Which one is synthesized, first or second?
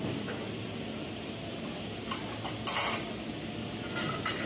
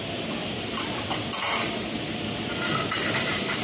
second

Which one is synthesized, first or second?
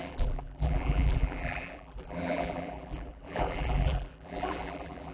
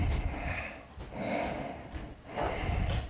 first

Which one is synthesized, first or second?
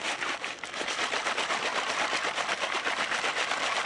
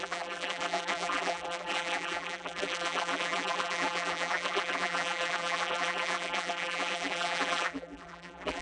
second